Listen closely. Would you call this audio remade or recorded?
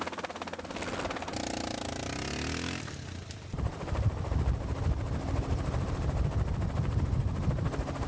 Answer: recorded